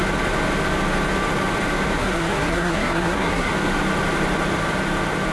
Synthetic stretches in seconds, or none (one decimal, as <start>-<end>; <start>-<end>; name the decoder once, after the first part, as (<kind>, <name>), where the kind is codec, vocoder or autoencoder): 2.0-3.5 (codec, SNAC)